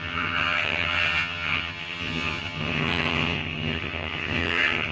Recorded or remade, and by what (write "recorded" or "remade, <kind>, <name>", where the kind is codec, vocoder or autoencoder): remade, vocoder, HiFi-GAN